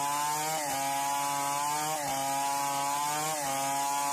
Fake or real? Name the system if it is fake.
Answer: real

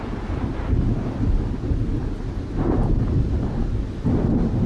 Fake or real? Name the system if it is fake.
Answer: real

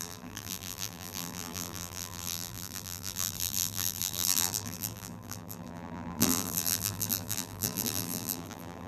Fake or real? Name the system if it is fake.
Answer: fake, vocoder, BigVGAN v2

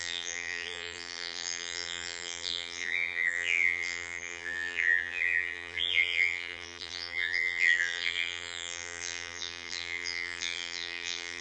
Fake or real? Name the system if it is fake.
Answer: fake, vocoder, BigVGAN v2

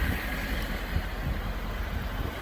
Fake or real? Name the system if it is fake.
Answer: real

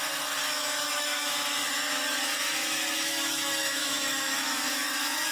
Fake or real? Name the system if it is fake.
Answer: fake, autoencoder, DAC-VAE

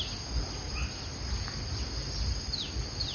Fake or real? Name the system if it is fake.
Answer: real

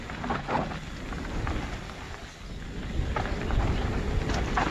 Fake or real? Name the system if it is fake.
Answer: real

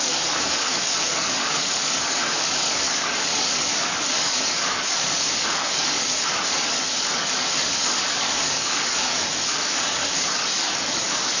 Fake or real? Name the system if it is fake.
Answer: fake, codec, DAC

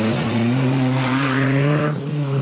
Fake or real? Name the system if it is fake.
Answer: fake, vocoder, Vocos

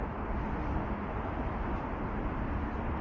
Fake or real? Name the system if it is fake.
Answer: real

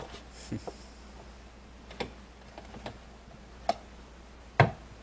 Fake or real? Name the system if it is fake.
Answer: real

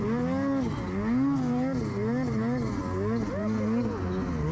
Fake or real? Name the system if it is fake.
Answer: real